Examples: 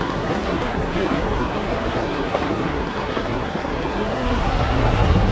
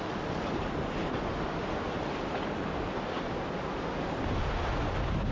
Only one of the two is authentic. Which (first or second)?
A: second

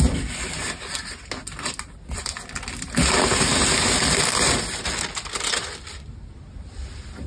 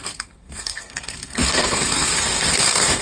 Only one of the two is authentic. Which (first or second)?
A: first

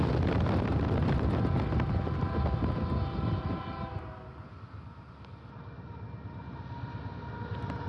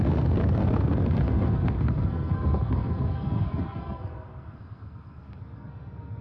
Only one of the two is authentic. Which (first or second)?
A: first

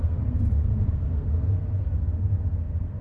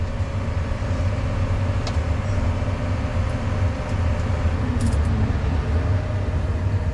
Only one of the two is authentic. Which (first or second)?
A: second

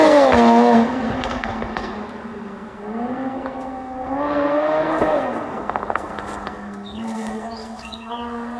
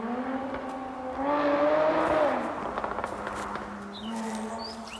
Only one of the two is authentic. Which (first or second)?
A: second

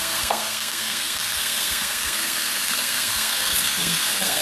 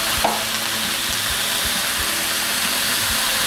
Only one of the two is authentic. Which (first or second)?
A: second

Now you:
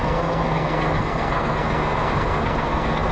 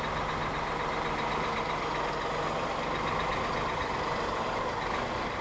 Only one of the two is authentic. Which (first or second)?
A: second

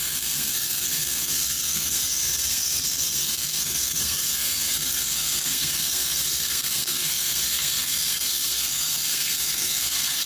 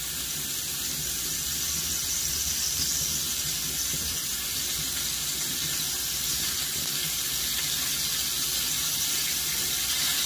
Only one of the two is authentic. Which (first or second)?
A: second